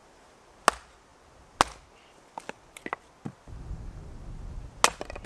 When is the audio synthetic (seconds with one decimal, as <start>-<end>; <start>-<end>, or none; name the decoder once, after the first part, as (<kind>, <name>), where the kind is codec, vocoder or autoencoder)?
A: none